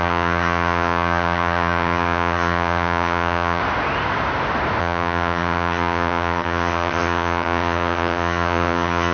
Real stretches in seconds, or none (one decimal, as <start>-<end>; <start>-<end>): 3.6-4.8